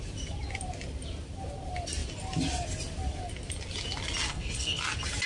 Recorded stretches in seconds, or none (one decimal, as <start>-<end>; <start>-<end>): 0.0-4.3; 4.8-5.3